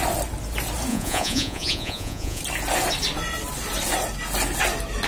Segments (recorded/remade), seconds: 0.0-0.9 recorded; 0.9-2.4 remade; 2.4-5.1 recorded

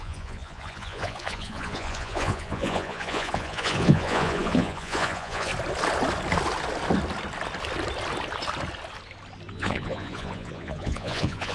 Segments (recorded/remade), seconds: 0.0-5.5 remade; 5.5-9.5 recorded; 9.5-11.5 remade